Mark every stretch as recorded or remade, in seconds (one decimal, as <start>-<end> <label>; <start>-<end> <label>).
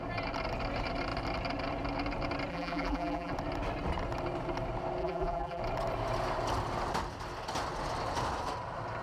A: 0.0-2.5 recorded; 2.5-3.3 remade; 3.3-5.0 recorded; 5.0-5.6 remade; 5.6-9.0 recorded